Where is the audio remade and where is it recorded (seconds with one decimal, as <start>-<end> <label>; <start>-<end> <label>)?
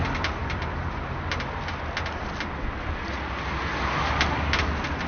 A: 0.0-5.1 recorded